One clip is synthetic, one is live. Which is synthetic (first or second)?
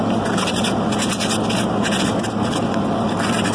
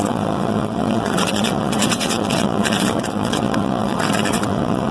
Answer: second